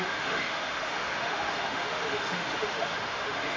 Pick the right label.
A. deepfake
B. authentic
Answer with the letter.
A